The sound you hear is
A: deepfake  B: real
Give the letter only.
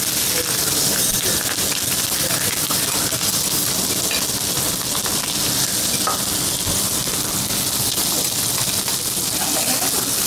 B